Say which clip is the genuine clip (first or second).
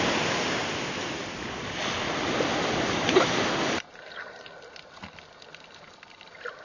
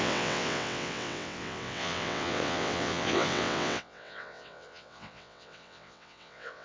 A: first